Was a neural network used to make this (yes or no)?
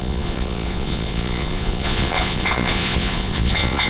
yes